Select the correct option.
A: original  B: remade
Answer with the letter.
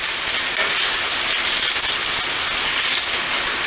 A